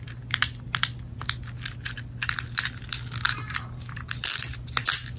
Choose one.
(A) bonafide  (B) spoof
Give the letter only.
A